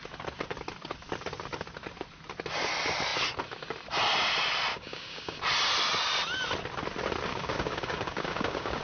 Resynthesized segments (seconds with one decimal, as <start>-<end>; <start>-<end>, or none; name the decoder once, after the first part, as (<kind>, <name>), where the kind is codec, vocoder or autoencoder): 4.7-5.4 (codec, DAC); 7.3-8.8